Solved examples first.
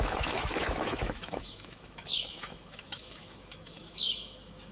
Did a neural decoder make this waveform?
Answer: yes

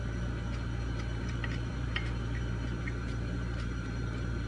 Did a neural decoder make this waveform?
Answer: yes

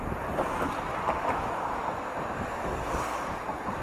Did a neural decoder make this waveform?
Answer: no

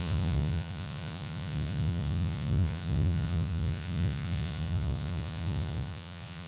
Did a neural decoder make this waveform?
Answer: yes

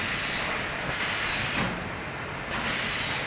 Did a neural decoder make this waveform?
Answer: no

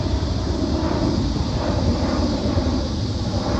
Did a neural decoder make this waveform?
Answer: yes